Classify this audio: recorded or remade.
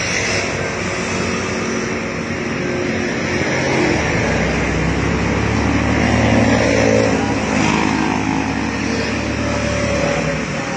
recorded